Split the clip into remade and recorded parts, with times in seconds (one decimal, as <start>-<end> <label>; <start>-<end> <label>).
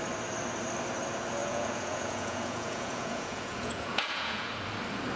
0.0-1.4 recorded; 1.4-4.5 remade; 4.5-5.2 recorded